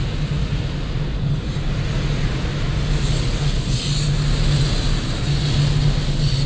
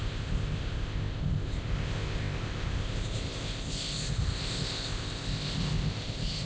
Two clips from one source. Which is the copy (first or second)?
second